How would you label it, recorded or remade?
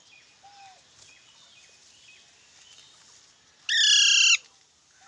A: recorded